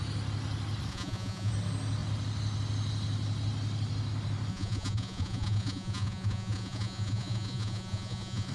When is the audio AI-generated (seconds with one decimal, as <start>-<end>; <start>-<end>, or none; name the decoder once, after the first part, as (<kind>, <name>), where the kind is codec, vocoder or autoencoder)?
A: 0.9-1.5 (vocoder, Vocos); 4.5-8.5